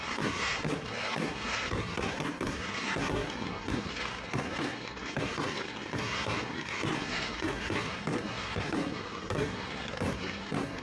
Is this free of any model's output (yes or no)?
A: no